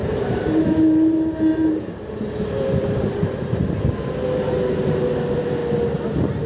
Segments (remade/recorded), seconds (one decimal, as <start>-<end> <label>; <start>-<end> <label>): 0.0-3.7 remade; 3.7-6.5 recorded